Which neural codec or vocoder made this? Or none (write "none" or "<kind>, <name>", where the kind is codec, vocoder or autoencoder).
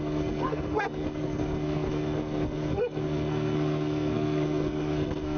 codec, SNAC